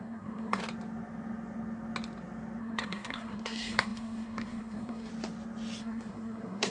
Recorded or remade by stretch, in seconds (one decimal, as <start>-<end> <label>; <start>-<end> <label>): 0.0-0.6 remade; 0.6-2.6 recorded; 2.6-5.1 remade; 5.1-5.8 recorded; 5.8-6.7 remade